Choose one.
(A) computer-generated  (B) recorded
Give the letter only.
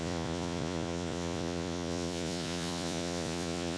A